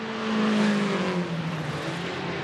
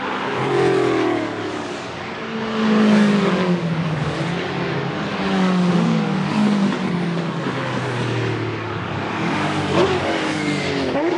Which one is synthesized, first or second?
second